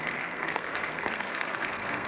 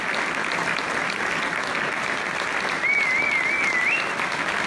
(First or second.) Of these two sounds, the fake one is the first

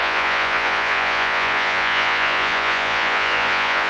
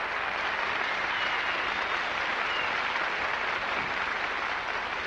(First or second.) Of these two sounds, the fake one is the first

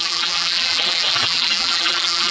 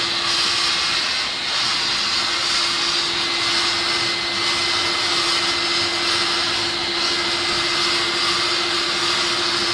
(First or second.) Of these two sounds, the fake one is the first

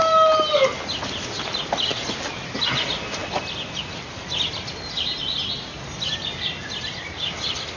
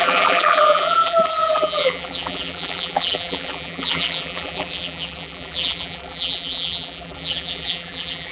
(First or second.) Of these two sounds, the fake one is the second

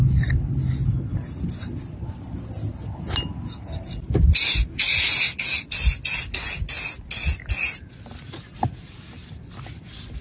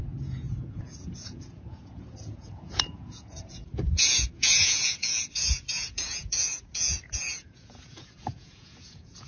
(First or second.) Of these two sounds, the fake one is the second